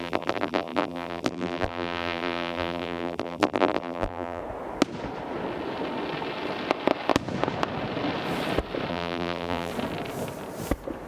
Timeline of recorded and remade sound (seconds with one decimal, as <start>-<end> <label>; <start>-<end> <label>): 0.0-4.4 remade; 4.4-8.9 recorded; 8.9-9.7 remade; 9.7-11.1 recorded